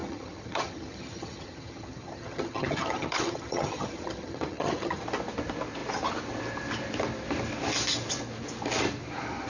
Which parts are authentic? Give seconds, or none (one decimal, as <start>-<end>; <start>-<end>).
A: 5.0-9.5